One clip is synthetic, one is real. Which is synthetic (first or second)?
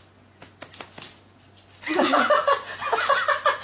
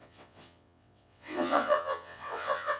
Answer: second